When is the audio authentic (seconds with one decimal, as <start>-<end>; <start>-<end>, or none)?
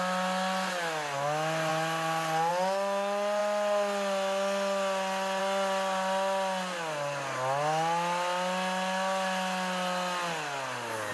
0.0-11.1